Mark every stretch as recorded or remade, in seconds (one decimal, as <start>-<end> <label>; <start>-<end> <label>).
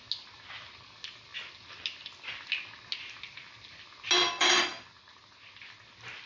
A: 0.0-6.3 recorded